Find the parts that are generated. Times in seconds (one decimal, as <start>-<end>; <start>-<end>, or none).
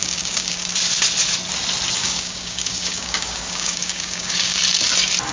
0.0-0.5; 2.0-4.6